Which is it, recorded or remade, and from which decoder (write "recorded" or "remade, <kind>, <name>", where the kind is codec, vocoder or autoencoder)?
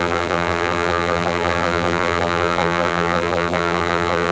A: remade, vocoder, BigVGAN v2